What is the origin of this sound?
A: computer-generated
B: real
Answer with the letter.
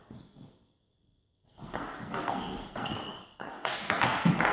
A